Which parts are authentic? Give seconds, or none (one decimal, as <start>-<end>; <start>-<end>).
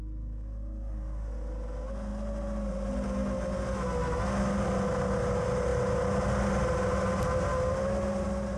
0.0-8.6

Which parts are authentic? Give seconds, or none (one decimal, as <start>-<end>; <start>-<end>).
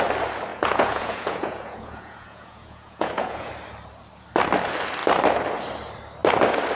0.0-0.5; 3.5-6.8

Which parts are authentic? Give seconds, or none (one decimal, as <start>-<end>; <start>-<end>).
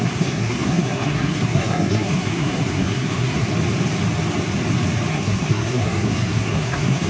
3.5-5.1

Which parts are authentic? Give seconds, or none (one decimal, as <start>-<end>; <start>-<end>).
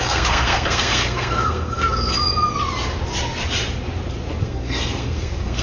2.1-4.4